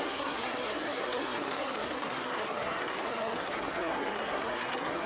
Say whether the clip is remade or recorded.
remade